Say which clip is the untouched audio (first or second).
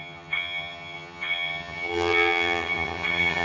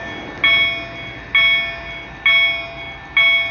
second